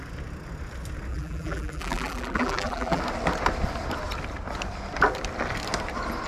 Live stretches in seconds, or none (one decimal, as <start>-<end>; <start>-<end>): 0.0-1.1; 3.0-6.3